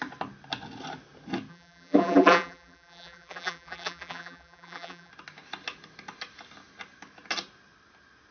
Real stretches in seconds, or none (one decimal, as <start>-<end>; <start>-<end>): 0.0-1.5; 5.1-8.3